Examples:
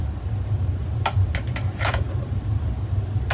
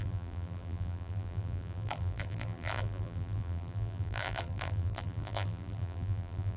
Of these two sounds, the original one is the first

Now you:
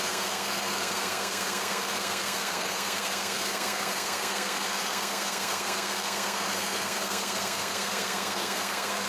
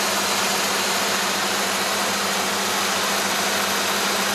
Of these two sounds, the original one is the second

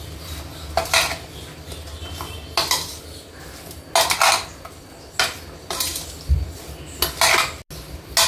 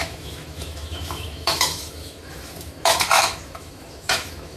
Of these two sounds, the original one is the first